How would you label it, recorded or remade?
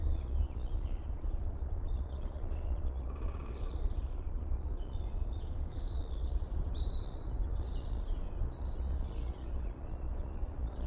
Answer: remade